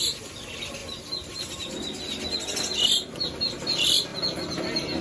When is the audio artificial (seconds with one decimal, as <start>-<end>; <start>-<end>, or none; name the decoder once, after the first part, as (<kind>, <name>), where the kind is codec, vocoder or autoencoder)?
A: none